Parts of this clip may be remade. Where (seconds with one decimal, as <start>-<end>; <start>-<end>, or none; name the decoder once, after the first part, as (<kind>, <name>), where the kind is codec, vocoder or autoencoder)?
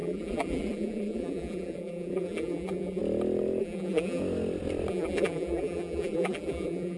0.0-3.0 (vocoder, BigVGAN v2); 3.6-4.2; 4.9-7.0